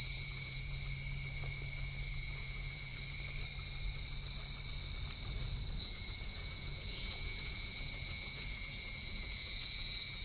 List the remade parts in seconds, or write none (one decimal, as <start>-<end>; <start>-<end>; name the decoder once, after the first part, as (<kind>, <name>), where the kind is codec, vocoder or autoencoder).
0.0-0.8 (vocoder, Vocos); 2.1-2.9; 5.8-10.2